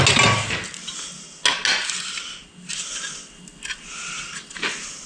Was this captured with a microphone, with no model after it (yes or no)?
yes